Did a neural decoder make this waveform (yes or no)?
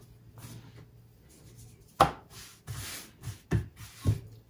no